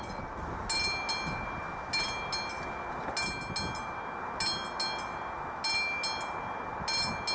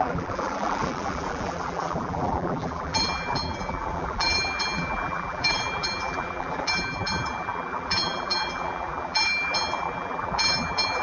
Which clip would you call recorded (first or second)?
first